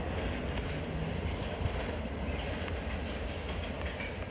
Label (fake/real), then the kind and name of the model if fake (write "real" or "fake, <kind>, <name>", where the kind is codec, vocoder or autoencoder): real